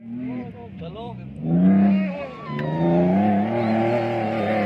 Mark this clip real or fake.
real